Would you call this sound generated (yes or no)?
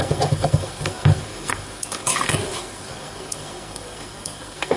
yes